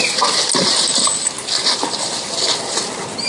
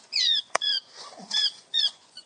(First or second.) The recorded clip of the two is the first